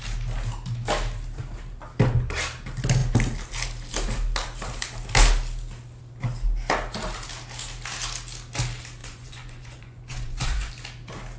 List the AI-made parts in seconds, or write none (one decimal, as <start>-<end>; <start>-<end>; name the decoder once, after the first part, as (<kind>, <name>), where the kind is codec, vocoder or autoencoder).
9.0-10.7 (vocoder, Vocos)